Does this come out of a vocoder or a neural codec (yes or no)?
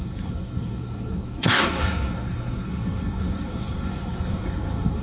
yes